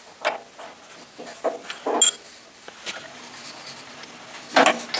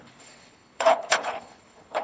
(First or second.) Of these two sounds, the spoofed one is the second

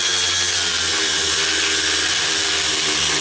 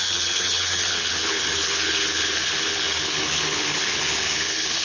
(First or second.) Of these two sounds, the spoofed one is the second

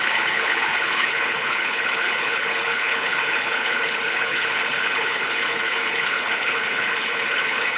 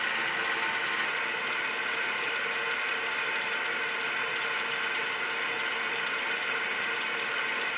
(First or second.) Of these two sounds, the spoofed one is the first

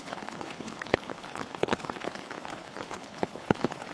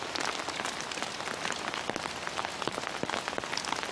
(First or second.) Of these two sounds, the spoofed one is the first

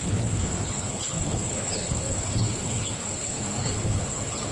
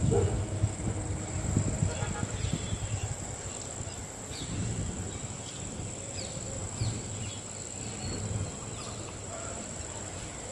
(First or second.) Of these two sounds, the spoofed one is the first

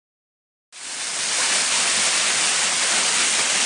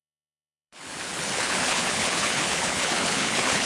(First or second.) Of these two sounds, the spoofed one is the second